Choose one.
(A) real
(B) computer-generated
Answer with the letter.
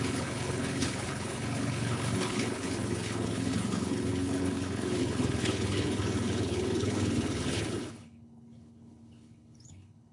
B